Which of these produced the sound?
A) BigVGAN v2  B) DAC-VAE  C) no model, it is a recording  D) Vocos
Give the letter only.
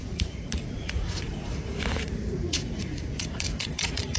D